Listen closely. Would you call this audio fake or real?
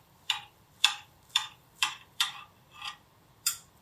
fake